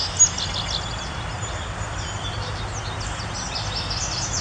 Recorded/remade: recorded